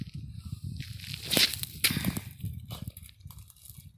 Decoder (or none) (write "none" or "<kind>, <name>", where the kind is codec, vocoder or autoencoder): none